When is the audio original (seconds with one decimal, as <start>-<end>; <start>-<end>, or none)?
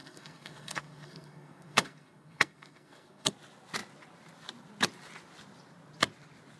3.3-6.6